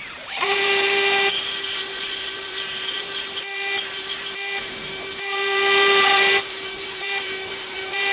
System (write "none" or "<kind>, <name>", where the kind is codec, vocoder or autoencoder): vocoder, BigVGAN v2